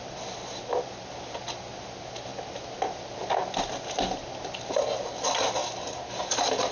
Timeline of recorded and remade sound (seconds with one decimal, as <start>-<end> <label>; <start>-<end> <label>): 0.0-6.7 recorded